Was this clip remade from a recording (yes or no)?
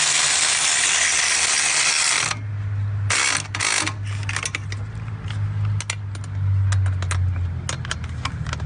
no